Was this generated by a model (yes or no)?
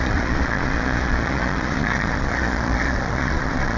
yes